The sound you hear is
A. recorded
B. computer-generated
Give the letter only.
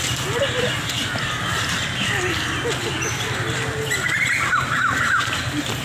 A